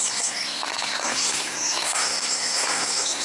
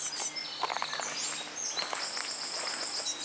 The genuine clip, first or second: second